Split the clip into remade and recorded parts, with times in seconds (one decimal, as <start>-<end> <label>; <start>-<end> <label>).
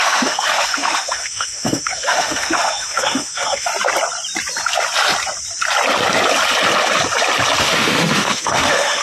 0.0-3.7 remade; 3.7-7.6 recorded; 7.6-9.0 remade